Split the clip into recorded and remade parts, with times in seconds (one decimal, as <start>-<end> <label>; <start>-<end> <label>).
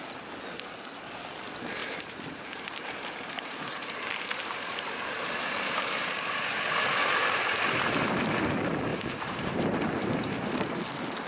0.0-1.8 recorded; 1.8-6.6 remade; 6.6-8.9 recorded; 8.9-10.3 remade; 10.3-11.3 recorded